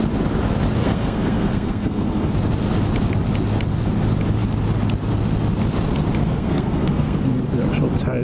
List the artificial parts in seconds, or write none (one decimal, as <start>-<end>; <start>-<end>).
0.8-2.3; 6.2-7.4

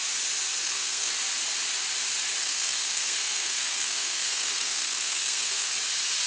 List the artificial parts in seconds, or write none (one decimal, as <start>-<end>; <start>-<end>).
0.6-1.1; 2.4-5.7